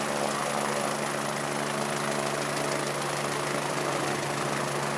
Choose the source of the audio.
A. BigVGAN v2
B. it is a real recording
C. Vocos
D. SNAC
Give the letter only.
B